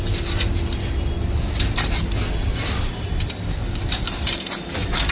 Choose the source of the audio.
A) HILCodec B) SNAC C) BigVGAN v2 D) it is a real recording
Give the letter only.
D